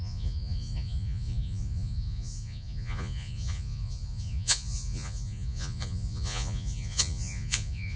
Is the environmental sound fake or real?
fake